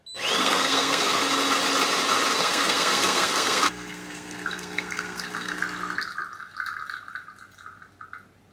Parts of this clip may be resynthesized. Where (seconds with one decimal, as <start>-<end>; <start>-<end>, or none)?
0.4-1.2; 2.4-5.6